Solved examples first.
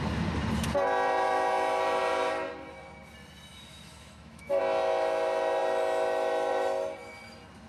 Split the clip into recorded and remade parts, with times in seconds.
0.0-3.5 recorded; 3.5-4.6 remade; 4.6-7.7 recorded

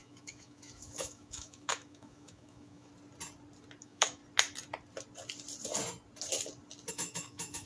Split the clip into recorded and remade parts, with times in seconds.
0.0-2.9 remade; 2.9-3.8 recorded; 3.8-4.2 remade; 4.2-6.9 recorded; 6.9-7.7 remade

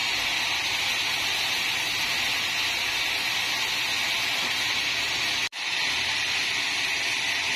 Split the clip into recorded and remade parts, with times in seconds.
0.0-7.6 recorded